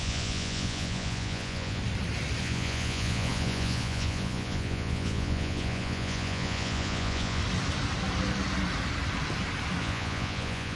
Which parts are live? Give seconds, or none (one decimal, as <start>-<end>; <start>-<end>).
1.8-2.4; 7.4-9.8